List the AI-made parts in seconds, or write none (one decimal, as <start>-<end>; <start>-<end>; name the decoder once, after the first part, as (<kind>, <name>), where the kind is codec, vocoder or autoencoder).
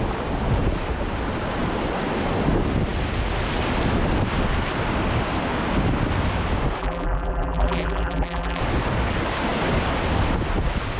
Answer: 6.8-8.6 (vocoder, BigVGAN v2)